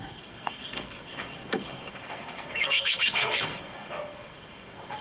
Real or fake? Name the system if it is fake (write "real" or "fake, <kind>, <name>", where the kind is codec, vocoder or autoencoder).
fake, codec, SNAC